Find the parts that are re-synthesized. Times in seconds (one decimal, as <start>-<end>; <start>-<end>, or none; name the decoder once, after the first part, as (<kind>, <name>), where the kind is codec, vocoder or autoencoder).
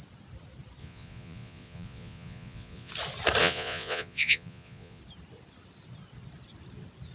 0.8-2.9 (vocoder, Vocos); 3.4-5.0